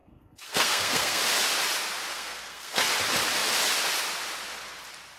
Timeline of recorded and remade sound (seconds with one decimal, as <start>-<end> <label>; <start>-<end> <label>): 0.0-1.2 remade; 1.2-2.1 recorded; 2.1-2.8 remade; 2.8-5.2 recorded